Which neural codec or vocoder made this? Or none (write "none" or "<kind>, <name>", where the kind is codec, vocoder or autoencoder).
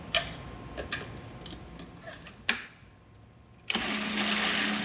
none